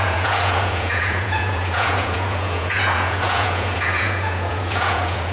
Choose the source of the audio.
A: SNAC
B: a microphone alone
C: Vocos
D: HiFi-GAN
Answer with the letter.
C